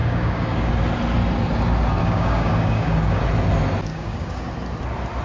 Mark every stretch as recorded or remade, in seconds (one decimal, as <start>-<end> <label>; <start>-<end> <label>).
0.0-0.7 remade; 0.7-2.0 recorded; 2.0-3.2 remade; 3.2-3.9 recorded; 3.9-4.4 remade; 4.4-5.2 recorded